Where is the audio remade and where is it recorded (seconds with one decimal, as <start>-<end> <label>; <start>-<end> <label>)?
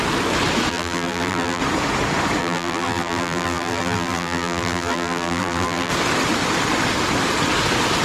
0.0-0.7 recorded; 0.7-1.6 remade; 1.6-2.4 recorded; 2.4-5.9 remade; 5.9-8.0 recorded